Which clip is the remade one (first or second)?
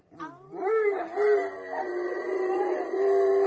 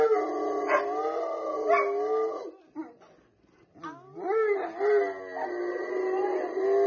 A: first